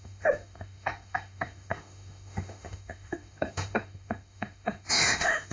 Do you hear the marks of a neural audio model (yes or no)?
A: yes